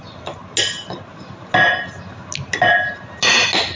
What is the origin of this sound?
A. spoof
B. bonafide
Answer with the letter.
B